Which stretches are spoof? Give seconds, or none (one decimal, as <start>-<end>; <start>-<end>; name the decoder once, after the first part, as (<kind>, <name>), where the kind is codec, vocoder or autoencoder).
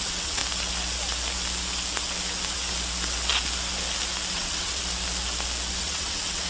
0.0-0.4 (vocoder, WaveNeXt); 4.3-4.8; 5.8-6.5